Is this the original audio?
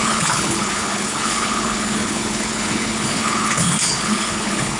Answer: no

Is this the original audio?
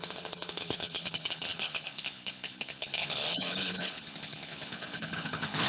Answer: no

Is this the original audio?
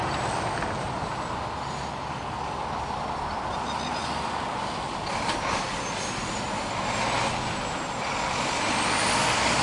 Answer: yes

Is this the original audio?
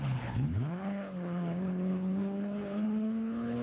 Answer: no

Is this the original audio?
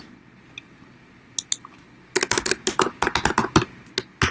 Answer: yes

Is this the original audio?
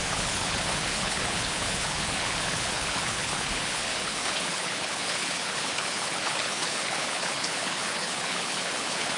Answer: no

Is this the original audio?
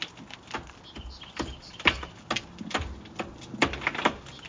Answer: yes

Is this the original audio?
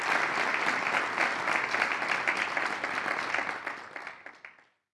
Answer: yes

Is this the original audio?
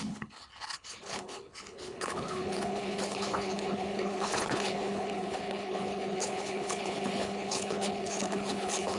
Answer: no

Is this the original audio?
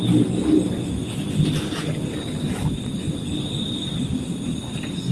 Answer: yes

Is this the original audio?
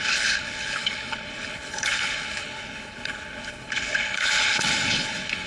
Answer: no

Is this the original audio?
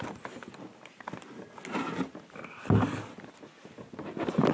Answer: yes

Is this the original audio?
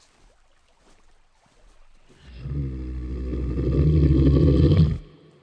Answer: yes